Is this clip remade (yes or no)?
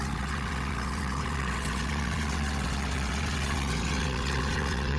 yes